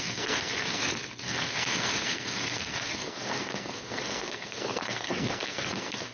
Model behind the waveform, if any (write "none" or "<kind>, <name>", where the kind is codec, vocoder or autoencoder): codec, SNAC